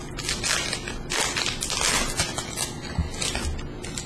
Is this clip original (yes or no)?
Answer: yes